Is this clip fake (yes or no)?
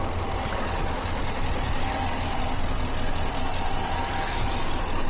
no